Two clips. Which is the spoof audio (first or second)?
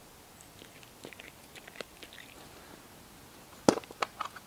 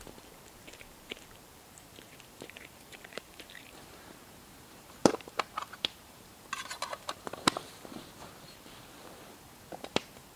second